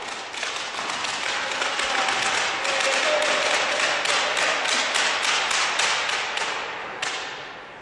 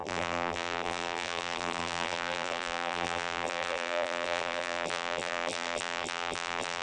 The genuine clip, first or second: first